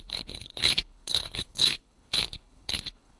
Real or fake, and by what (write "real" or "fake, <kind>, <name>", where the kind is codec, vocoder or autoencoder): fake, codec, HILCodec